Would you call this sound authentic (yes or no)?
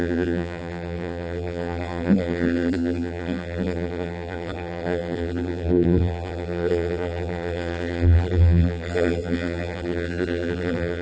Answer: no